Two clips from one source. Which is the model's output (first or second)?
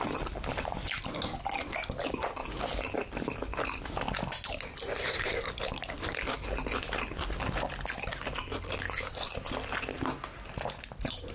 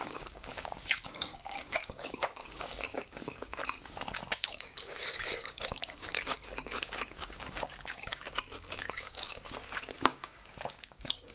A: second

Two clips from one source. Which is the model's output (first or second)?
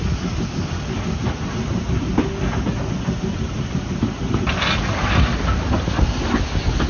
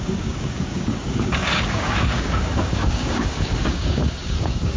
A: second